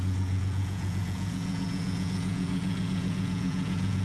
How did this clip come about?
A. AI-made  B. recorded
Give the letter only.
A